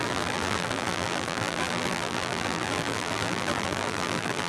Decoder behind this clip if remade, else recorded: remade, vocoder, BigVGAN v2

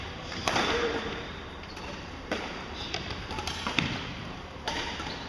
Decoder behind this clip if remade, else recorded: remade, vocoder, BigVGAN v2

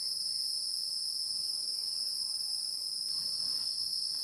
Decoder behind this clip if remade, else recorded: recorded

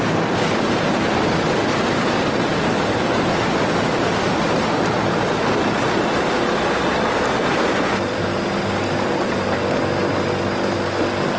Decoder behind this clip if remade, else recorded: recorded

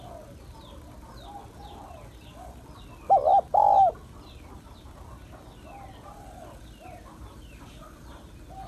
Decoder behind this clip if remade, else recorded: recorded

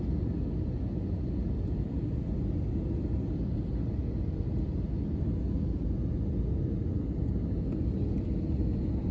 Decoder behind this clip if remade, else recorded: recorded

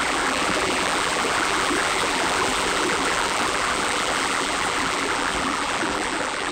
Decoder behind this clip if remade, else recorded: remade, vocoder, BigVGAN v2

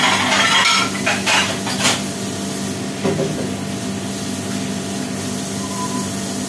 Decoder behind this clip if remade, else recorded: recorded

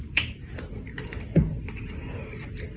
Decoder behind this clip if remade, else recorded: remade, vocoder, BigVGAN v2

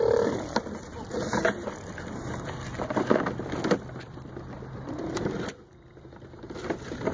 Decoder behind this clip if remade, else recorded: remade, vocoder, BigVGAN v2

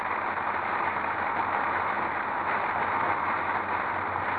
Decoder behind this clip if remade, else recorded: recorded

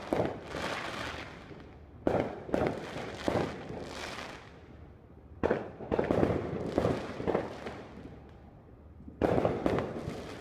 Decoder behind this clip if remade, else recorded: recorded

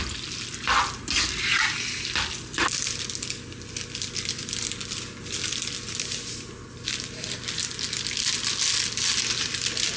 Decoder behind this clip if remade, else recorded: recorded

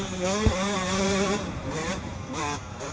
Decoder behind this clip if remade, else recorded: remade, vocoder, BigVGAN v2